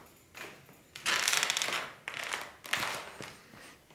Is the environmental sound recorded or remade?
recorded